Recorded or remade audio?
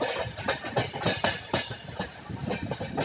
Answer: recorded